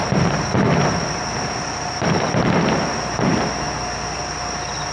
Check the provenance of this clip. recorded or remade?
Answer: recorded